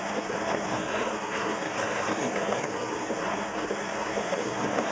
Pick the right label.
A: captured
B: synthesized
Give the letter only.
B